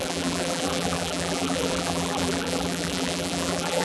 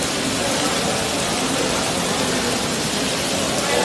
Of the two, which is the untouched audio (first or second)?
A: second